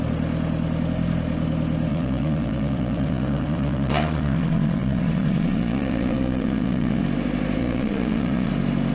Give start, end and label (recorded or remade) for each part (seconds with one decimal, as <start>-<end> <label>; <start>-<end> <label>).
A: 0.0-1.9 recorded; 1.9-7.0 remade; 7.0-7.6 recorded; 7.6-8.5 remade; 8.5-8.9 recorded